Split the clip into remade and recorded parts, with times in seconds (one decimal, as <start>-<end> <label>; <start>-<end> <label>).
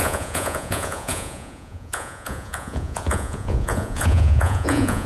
0.0-5.1 remade